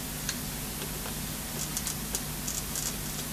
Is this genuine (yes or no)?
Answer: yes